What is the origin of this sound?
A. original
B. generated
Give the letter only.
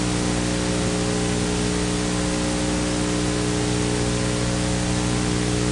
A